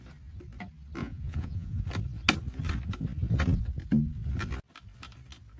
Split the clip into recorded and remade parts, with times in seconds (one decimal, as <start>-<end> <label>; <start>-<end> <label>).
0.0-1.0 recorded; 1.0-1.8 remade; 1.8-5.6 recorded